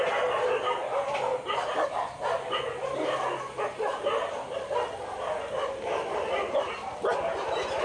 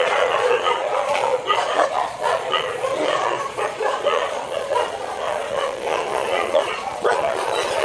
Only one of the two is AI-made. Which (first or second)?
second